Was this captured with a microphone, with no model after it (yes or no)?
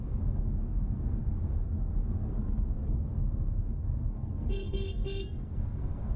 no